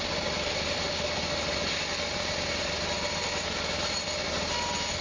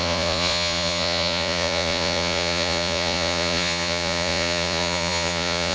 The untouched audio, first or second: first